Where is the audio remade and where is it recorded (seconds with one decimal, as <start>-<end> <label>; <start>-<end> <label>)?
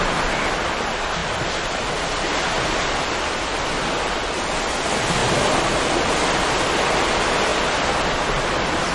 0.0-8.9 recorded